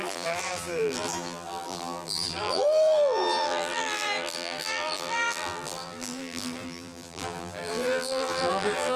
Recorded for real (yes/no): no